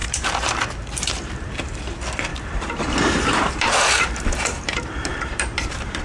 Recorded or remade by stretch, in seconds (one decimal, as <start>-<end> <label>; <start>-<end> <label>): 0.0-0.7 remade; 0.7-2.3 recorded; 2.3-6.0 remade

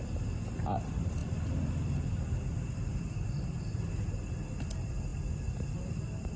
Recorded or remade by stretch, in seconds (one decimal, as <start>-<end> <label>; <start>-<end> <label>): 0.0-6.4 recorded

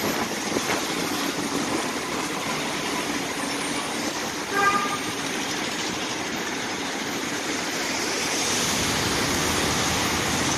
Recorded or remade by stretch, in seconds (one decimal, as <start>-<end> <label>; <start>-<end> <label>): 0.0-4.4 recorded; 4.4-8.8 remade; 8.8-10.6 recorded

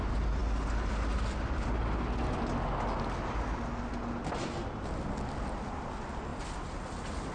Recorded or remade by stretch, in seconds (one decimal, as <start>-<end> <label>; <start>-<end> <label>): 0.0-7.3 recorded